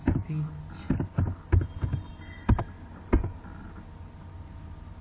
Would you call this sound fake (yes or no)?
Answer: no